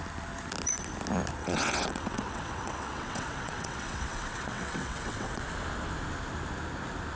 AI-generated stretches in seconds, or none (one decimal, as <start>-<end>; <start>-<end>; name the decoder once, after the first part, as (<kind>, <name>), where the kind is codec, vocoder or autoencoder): 1.4-5.4 (vocoder, WaveNeXt)